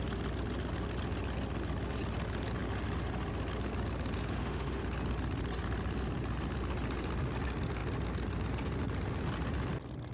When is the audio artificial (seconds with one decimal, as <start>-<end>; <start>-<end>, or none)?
4.2-4.8